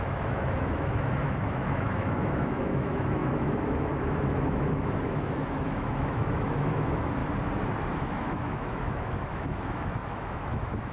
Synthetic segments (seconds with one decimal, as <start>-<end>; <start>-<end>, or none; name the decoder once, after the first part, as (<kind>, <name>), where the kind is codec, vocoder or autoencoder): 0.0-7.2 (autoencoder, DAC-VAE); 8.0-10.9